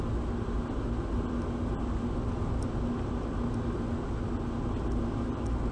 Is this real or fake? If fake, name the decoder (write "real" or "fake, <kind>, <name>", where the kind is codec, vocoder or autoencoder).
real